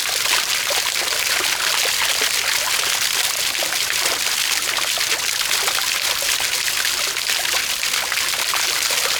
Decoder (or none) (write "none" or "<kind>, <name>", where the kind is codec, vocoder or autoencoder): none